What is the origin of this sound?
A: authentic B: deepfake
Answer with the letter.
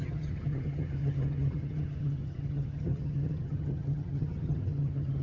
B